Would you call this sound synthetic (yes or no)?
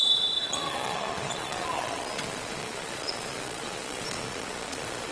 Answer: yes